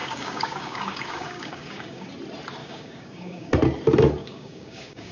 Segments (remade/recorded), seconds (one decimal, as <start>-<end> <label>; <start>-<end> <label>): 0.0-2.1 remade; 2.1-2.6 recorded; 2.6-3.5 remade; 3.5-4.2 recorded; 4.2-5.1 remade